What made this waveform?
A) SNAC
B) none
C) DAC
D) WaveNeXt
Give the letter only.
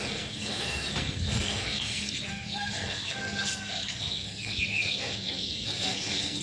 A